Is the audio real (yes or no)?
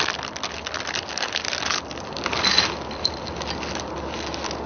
yes